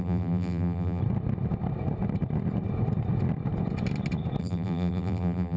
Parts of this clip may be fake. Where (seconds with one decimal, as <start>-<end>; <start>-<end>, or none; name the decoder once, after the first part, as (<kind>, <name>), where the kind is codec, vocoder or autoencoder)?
0.0-1.0 (vocoder, BigVGAN v2); 4.4-5.6

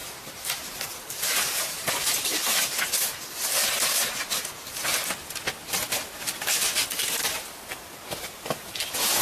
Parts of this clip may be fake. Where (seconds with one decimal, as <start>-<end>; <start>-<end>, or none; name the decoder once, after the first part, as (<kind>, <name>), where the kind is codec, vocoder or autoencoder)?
0.0-2.6 (vocoder, BigVGAN v2)

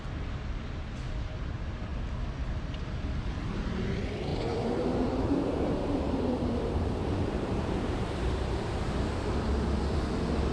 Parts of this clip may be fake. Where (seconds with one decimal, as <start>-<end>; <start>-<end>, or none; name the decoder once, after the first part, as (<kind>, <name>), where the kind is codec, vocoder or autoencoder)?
4.3-9.1 (vocoder, BigVGAN v2)